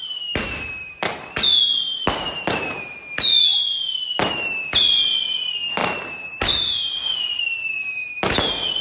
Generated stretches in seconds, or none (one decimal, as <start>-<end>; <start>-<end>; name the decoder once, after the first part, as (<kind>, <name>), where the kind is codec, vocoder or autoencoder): none